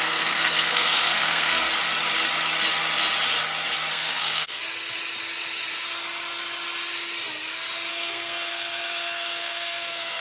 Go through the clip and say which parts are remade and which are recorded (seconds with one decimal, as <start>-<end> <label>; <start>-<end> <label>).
0.0-1.7 remade; 1.7-3.9 recorded; 3.9-4.6 remade; 4.6-7.9 recorded; 7.9-10.2 remade

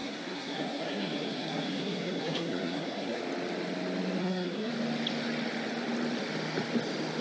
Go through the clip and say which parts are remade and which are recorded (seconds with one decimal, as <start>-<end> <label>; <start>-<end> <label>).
0.0-3.2 remade; 3.2-4.2 recorded; 4.2-4.7 remade; 4.7-7.2 recorded

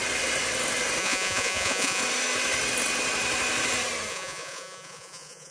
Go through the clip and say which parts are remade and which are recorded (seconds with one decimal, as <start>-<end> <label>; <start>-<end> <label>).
0.0-1.0 recorded; 1.0-2.0 remade; 2.0-4.1 recorded; 4.1-5.5 remade

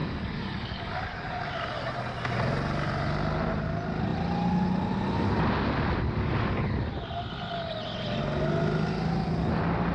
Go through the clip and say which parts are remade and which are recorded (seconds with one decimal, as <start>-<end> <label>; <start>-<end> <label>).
0.0-1.4 remade; 1.4-9.9 recorded

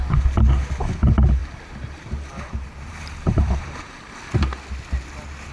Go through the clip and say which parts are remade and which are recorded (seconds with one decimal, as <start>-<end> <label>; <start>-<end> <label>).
0.0-1.4 recorded; 1.4-3.9 remade; 3.9-5.5 recorded

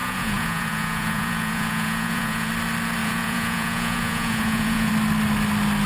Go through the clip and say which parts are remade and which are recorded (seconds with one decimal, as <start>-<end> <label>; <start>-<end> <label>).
0.0-2.5 remade; 2.5-3.0 recorded; 3.0-4.9 remade; 4.9-5.9 recorded

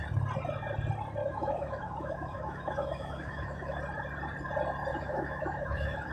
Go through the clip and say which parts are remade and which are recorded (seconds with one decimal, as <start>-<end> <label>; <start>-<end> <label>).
0.0-1.2 recorded; 1.2-3.8 remade; 3.8-4.9 recorded; 4.9-6.1 remade

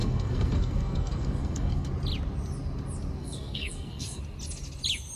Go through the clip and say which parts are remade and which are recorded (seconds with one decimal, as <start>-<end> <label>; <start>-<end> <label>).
0.0-1.9 remade; 1.9-3.2 recorded; 3.2-4.2 remade; 4.2-5.2 recorded